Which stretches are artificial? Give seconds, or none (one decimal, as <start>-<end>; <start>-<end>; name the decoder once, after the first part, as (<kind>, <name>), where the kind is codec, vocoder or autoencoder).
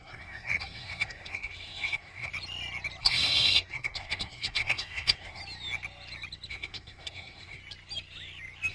0.0-2.3 (codec, SNAC); 3.0-5.4; 6.5-7.6